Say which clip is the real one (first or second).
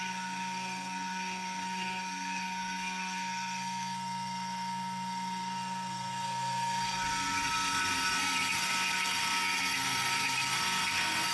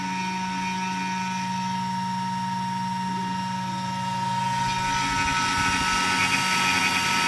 second